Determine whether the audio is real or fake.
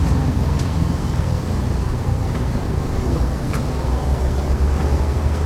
fake